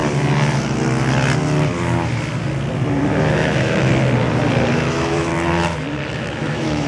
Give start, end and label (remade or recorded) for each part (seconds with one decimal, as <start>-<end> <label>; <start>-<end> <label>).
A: 0.0-3.3 recorded; 3.3-3.9 remade; 3.9-4.7 recorded; 4.7-5.3 remade; 5.3-6.1 recorded; 6.1-6.9 remade